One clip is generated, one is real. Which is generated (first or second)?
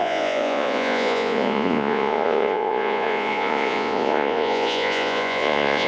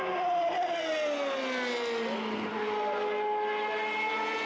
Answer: first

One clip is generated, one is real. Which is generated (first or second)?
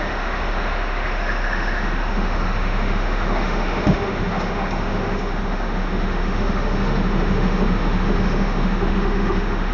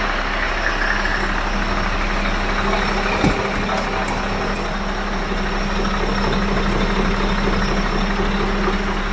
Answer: first